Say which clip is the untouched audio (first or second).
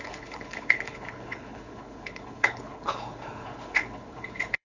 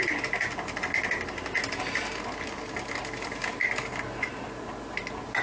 second